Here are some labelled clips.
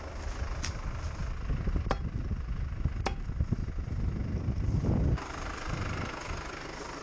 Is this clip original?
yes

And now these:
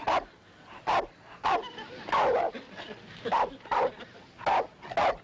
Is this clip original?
yes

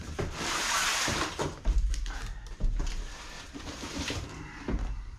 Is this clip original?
no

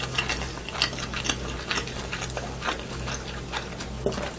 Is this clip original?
yes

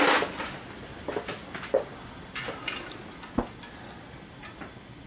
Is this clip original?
yes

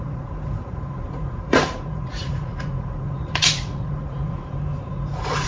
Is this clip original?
no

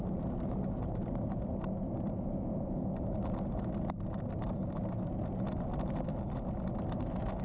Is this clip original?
yes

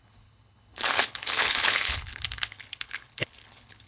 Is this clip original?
no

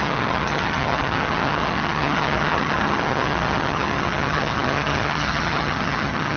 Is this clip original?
no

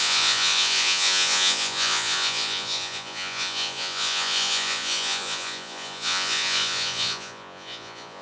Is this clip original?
no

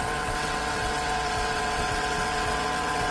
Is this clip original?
no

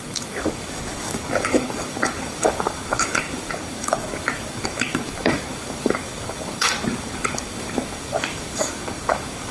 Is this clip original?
no